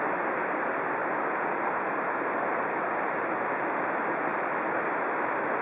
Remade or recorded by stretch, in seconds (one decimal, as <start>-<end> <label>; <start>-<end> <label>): 0.0-5.6 recorded